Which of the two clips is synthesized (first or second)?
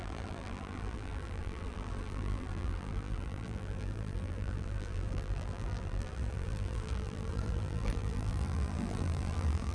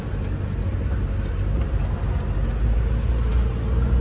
first